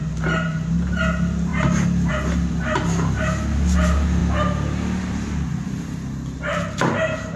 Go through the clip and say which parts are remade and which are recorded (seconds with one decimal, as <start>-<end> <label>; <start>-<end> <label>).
0.0-7.4 recorded